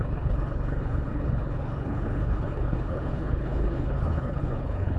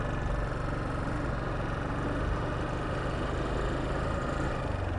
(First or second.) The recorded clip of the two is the second